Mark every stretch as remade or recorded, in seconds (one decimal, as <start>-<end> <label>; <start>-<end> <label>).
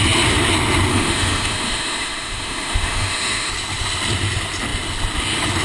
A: 0.0-0.9 recorded; 0.9-3.5 remade; 3.5-5.6 recorded